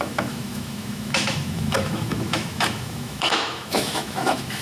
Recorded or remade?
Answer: remade